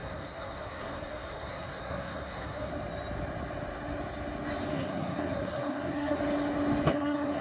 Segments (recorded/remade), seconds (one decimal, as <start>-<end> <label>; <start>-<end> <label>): 0.0-2.7 remade; 2.7-4.7 recorded; 4.7-6.2 remade; 6.2-6.9 recorded; 6.9-7.4 remade